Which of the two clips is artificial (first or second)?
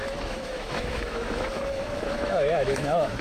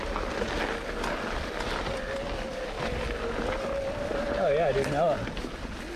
first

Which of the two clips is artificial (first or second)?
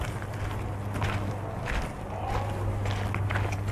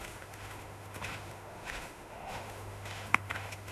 second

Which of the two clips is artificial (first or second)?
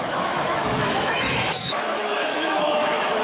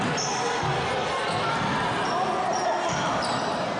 first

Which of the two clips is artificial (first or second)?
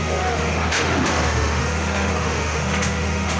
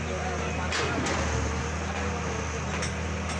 first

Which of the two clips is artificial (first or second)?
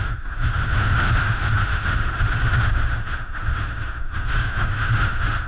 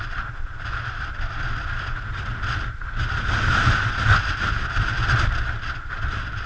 first